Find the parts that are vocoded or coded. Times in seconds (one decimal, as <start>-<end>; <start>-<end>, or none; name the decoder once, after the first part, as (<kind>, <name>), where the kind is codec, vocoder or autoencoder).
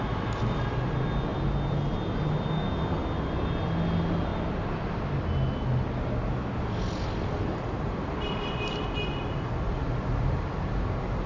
none